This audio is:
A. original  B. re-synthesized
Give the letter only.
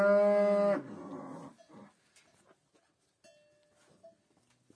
A